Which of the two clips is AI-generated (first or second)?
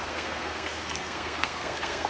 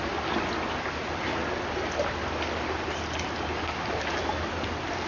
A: first